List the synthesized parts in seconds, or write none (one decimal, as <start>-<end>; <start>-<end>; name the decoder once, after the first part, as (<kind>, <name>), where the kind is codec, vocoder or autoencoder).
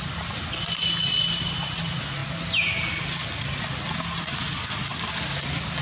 none